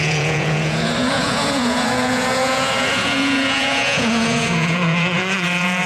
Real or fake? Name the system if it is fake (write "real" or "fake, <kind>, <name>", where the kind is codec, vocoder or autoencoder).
fake, vocoder, Vocos